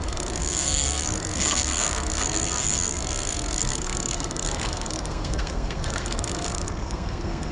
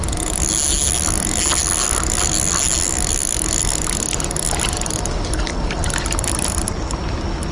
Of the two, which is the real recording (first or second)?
second